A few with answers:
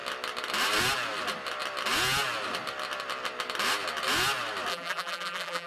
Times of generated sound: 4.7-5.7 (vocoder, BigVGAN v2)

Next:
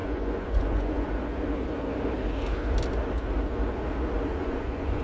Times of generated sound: 0.0-1.1 (vocoder, Vocos); 4.3-5.0

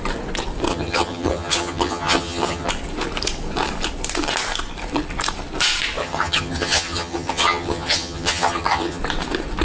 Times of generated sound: 0.7-2.7 (vocoder, HiFi-GAN); 6.0-9.0